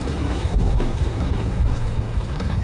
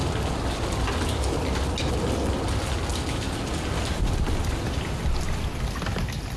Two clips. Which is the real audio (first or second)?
second